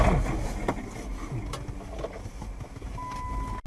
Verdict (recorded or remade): recorded